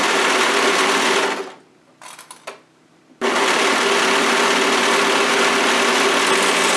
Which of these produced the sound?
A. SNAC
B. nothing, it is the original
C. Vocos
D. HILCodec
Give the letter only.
B